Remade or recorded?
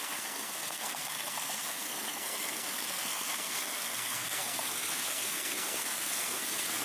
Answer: remade